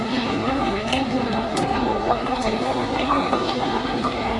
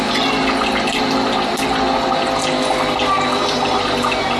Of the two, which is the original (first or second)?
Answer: second